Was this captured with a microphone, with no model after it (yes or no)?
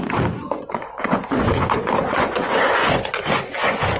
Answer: no